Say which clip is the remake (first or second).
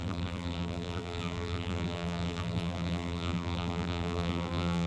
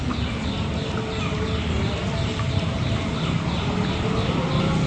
first